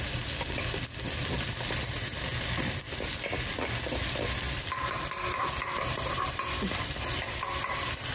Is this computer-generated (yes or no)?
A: no